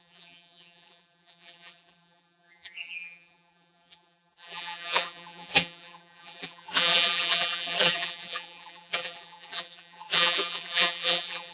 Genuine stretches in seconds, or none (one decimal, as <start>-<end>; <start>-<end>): none